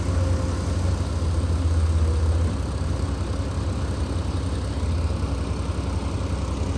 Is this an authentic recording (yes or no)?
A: yes